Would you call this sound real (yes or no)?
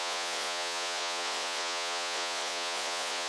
no